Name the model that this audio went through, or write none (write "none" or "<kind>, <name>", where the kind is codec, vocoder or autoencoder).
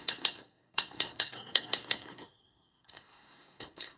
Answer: codec, SNAC